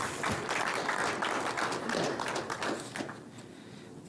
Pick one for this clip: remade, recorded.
recorded